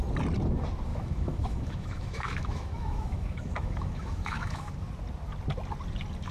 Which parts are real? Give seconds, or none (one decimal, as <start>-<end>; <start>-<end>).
0.0-0.9; 4.7-6.3